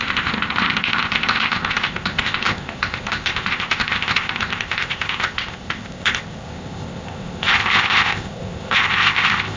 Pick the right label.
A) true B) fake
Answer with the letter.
B